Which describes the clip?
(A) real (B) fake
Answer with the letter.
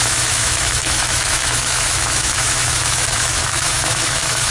B